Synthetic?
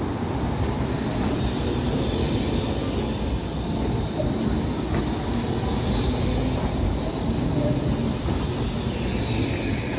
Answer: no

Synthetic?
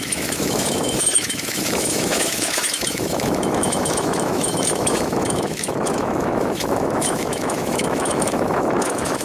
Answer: yes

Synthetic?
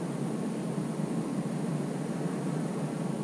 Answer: no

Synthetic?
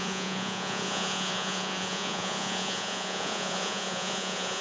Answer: yes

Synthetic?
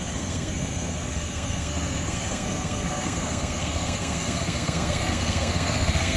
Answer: yes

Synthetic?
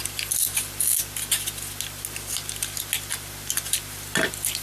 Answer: no